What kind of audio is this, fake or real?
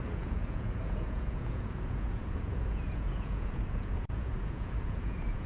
fake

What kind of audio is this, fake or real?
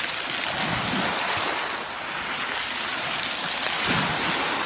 real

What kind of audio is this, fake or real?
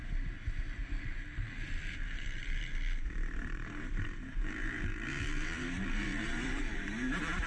fake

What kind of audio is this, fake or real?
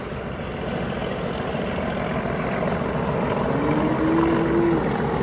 real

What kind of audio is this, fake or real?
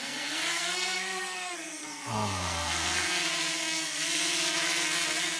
fake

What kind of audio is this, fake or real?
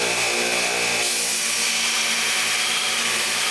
real